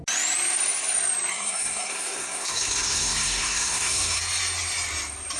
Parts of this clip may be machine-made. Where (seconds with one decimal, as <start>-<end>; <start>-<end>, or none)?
1.3-4.2